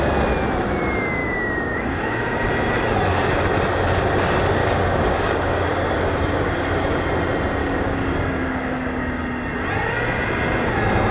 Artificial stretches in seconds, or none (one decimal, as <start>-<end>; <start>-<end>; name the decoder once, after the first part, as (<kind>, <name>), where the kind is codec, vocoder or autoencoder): 1.2-2.2 (codec, DAC); 4.6-7.0; 7.6-9.2